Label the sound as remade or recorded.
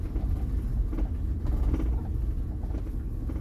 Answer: recorded